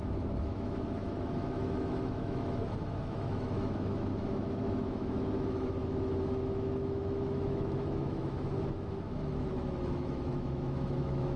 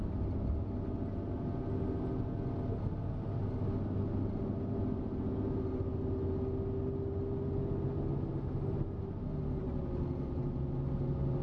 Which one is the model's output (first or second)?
first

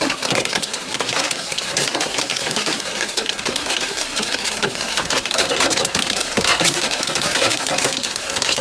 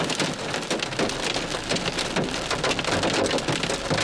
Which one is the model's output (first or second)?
first